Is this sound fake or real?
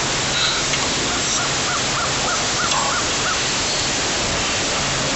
real